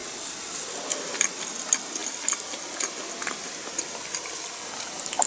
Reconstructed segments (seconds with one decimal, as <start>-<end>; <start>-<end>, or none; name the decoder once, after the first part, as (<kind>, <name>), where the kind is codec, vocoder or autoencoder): none